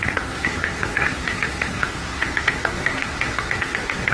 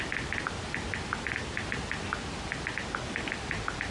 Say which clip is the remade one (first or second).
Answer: first